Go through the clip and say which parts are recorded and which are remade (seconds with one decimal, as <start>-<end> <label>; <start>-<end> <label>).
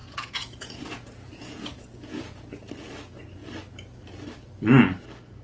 0.0-2.7 remade; 2.7-5.4 recorded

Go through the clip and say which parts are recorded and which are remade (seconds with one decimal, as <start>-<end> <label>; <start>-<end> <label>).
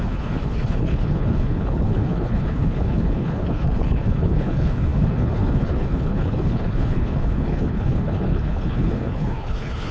0.0-9.9 remade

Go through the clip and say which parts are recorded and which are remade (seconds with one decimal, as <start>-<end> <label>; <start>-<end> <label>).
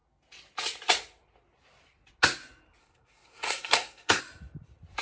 0.0-2.8 recorded; 2.8-4.2 remade; 4.2-5.0 recorded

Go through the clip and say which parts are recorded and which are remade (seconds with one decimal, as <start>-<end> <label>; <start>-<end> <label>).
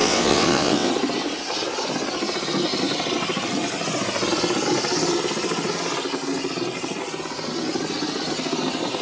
0.0-0.9 remade; 0.9-9.0 recorded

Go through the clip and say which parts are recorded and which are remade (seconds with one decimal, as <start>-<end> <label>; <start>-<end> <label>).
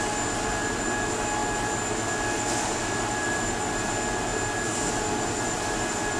0.0-6.2 recorded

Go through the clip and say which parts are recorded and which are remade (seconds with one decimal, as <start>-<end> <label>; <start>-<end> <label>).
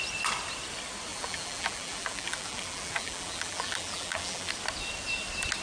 0.0-1.1 recorded; 1.1-4.5 remade; 4.5-5.6 recorded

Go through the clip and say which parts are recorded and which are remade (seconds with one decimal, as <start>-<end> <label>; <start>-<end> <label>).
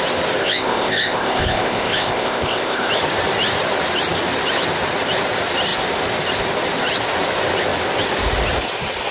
0.0-0.4 recorded; 0.4-2.9 remade; 2.9-9.1 recorded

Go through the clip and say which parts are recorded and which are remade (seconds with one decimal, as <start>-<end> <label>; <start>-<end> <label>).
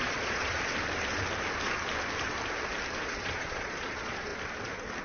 0.0-0.7 remade; 0.7-3.0 recorded; 3.0-4.3 remade; 4.3-5.0 recorded